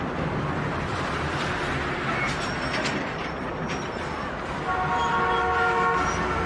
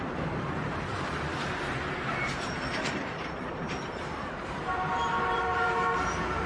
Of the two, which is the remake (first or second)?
second